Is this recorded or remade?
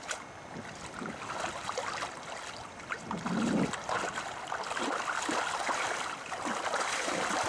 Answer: recorded